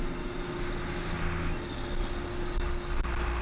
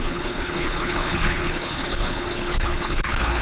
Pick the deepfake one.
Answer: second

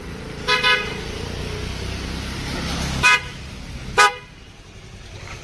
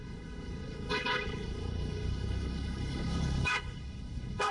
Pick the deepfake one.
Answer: second